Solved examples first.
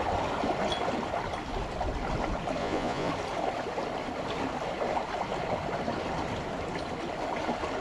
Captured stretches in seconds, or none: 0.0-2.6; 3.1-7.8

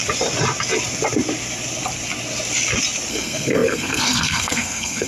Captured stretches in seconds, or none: 0.0-3.1

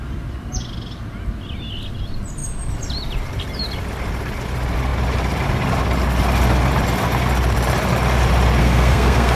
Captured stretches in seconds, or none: 0.0-8.6

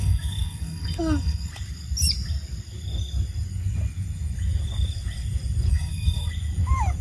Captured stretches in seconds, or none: 1.5-5.7; 6.3-7.0

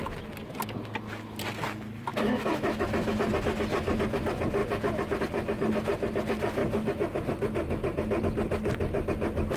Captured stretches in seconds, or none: 0.0-2.1; 3.2-9.6

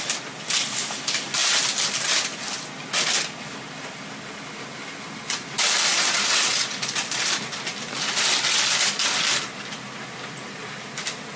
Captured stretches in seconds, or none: 0.0-11.4